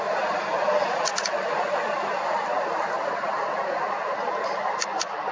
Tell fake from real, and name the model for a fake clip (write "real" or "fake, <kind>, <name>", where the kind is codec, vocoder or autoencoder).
real